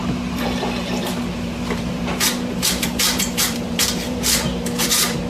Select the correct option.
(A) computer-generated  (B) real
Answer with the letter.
A